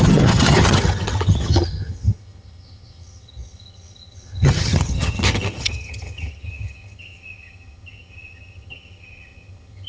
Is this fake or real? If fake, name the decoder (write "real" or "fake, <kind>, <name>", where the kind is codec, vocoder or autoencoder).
fake, vocoder, HiFi-GAN